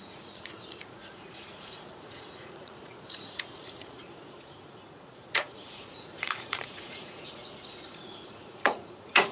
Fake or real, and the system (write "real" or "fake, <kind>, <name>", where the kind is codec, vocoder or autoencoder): fake, vocoder, Vocos